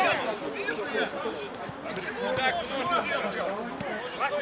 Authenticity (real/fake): real